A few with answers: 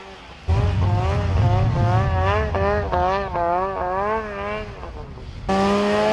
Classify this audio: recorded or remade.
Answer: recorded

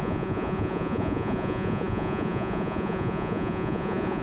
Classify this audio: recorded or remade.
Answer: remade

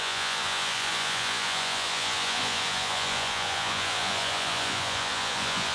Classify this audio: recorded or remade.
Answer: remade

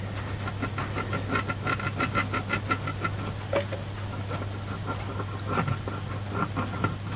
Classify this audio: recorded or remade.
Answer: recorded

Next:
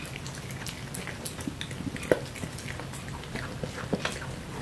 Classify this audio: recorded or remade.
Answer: recorded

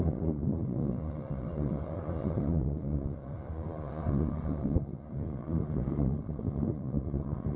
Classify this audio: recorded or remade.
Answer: remade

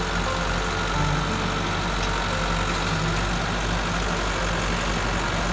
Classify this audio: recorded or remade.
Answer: recorded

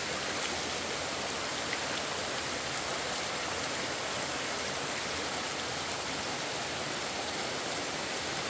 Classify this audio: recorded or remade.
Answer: recorded